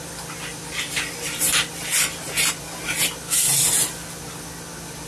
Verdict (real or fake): real